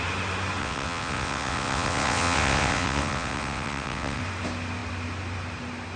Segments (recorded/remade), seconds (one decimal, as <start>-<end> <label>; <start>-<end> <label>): 0.0-0.6 recorded; 0.6-4.2 remade; 4.2-6.0 recorded